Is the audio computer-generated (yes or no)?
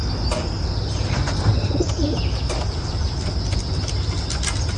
no